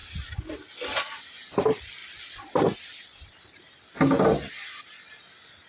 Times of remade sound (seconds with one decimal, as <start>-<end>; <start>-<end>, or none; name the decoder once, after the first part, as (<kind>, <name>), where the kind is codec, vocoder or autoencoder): 1.2-5.7 (vocoder, BigVGAN v2)